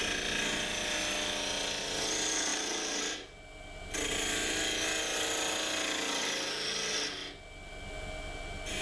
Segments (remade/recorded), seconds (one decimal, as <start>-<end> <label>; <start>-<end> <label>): 0.0-8.8 recorded